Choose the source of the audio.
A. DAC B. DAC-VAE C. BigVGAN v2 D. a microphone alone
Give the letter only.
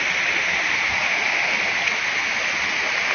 D